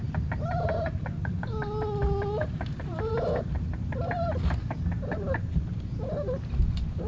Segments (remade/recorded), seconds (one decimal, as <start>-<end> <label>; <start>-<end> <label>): 0.0-2.4 recorded; 2.4-3.1 remade; 3.1-7.1 recorded